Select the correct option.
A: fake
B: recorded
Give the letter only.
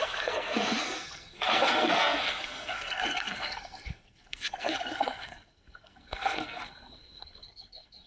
A